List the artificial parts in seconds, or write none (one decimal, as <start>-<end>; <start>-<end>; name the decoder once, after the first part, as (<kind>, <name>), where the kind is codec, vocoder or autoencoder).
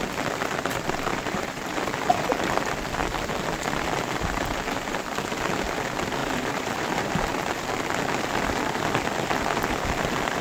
1.1-1.8 (vocoder, BigVGAN v2); 6.2-7.1